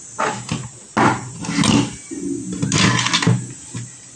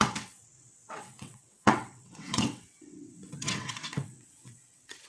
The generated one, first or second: second